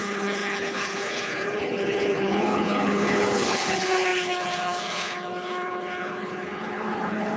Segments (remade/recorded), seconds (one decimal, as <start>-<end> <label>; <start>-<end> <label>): 0.0-7.4 remade